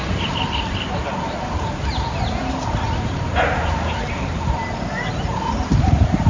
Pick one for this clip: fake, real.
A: real